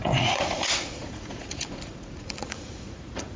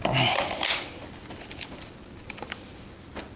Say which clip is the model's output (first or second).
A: first